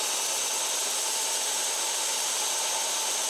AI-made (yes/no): no